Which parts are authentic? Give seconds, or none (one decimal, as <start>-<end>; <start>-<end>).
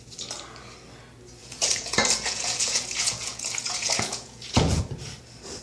0.0-1.4; 4.8-5.6